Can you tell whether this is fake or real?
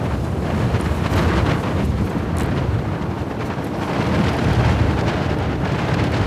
real